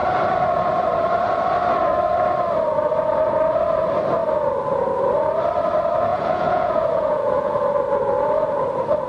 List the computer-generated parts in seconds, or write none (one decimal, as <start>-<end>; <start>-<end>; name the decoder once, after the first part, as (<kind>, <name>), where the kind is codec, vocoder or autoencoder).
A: 6.1-7.6 (vocoder, Vocos)